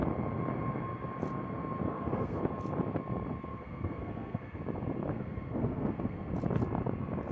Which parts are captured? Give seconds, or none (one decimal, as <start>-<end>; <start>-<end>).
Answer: 0.0-1.9; 2.4-3.5; 4.6-5.1; 6.3-7.3

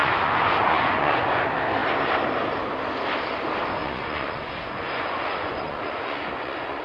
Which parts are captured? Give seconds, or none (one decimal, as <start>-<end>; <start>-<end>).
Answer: 1.4-3.8

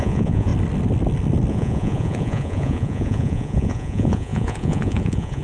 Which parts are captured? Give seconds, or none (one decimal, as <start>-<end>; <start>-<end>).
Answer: 0.5-1.5